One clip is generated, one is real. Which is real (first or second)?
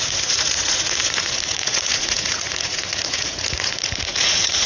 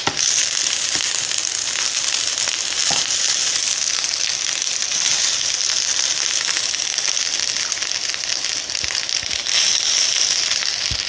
second